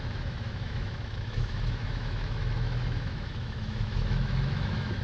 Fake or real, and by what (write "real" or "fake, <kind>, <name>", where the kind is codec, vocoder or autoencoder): fake, autoencoder, DAC-VAE